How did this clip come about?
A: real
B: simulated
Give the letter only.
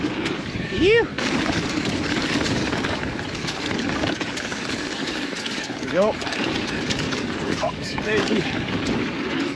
B